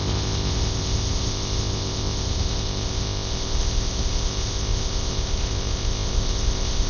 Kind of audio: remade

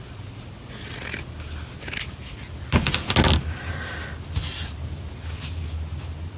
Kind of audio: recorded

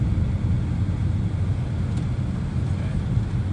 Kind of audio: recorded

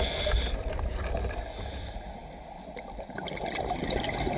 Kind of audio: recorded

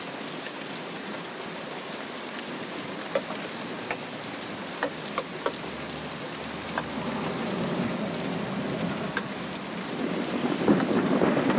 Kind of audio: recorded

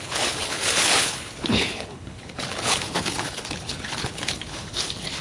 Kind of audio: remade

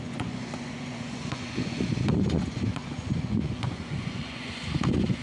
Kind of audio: remade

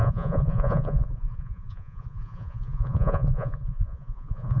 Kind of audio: remade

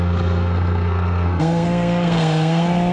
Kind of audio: remade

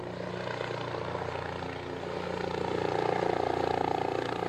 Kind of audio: recorded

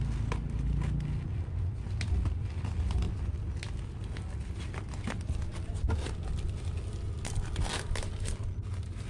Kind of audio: recorded